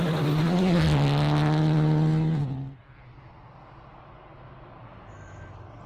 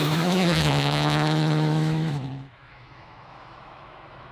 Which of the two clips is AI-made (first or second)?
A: second